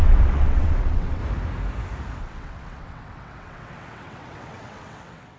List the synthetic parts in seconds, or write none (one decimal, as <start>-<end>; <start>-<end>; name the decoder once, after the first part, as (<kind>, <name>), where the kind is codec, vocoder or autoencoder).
0.0-1.2 (vocoder, WaveNeXt); 2.2-5.4